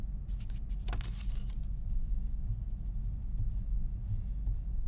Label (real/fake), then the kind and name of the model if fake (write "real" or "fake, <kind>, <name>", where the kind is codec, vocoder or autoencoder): real